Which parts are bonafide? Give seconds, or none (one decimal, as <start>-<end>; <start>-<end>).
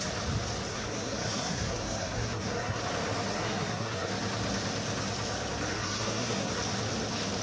0.0-0.7; 2.8-3.3; 4.1-5.7; 6.5-7.4